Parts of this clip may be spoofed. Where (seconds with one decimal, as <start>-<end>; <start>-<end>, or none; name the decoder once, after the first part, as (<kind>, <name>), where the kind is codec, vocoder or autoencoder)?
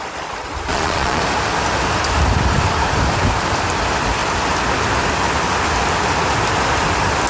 0.7-1.2 (vocoder, Vocos)